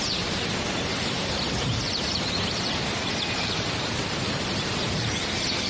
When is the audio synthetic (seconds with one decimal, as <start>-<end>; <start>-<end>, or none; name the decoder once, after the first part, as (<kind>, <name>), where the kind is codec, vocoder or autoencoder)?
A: 0.9-4.3 (vocoder, BigVGAN v2)